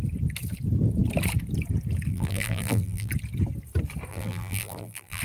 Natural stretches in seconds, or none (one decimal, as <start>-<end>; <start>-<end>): 0.0-2.1; 3.1-4.1